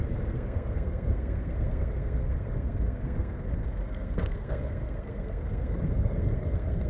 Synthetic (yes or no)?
yes